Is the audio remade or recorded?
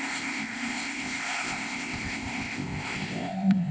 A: remade